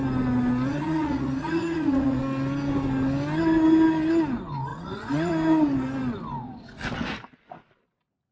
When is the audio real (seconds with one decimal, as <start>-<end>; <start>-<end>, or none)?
0.0-0.7; 2.2-4.7; 5.3-8.3